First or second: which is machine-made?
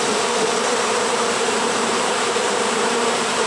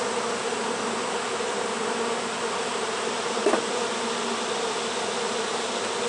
first